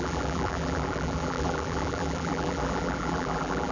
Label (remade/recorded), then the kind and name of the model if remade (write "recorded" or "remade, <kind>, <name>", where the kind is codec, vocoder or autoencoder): remade, vocoder, BigVGAN v2